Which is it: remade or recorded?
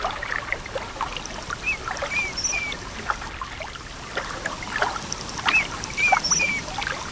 recorded